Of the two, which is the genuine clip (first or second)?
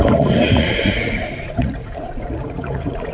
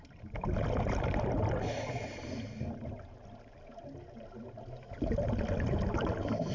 second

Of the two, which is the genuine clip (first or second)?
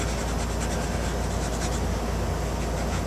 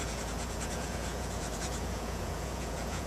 first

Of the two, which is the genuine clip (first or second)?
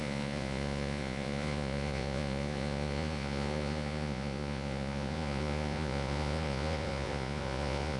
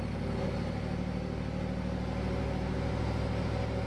second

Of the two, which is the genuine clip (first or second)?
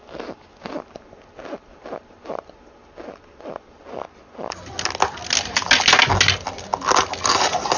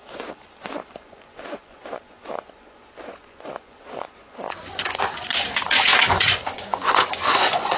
first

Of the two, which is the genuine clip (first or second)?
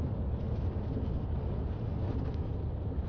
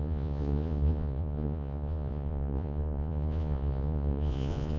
first